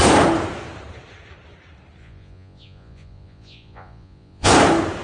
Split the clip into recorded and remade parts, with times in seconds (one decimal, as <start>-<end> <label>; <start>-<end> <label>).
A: 0.0-2.0 recorded; 2.0-4.5 remade; 4.5-5.0 recorded